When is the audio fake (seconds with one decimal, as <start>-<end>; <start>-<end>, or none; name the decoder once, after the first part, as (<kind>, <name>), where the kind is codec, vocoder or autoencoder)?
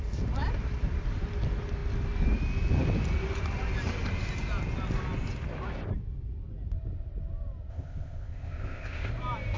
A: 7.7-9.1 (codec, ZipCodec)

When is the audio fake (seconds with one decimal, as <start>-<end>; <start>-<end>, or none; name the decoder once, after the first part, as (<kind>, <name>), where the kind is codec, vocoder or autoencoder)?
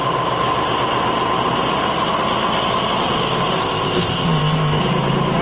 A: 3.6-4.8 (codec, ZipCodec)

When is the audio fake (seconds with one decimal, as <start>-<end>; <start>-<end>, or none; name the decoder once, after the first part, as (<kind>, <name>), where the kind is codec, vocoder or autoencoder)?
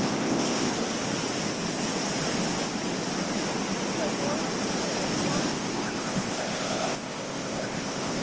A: 0.0-0.7 (codec, ZipCodec); 5.5-8.2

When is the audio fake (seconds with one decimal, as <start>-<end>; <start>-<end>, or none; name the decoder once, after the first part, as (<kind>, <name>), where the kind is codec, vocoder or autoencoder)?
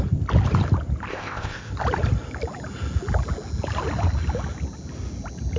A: 1.1-1.7 (codec, ZipCodec)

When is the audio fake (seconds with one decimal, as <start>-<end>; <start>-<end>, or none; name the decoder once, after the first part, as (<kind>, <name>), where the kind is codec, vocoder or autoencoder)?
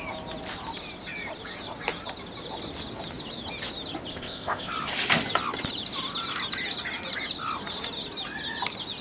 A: 4.1-4.7 (codec, ZipCodec)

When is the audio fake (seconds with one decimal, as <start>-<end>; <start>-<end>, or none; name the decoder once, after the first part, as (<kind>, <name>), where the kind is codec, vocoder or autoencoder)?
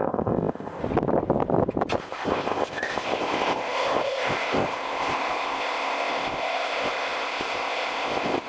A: 0.0-0.8 (codec, ZipCodec); 2.0-8.5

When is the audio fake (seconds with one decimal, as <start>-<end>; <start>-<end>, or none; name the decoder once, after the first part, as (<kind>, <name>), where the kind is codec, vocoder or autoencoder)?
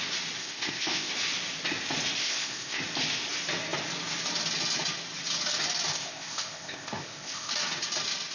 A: 0.4-1.1 (codec, ZipCodec); 2.2-2.8; 5.9-7.5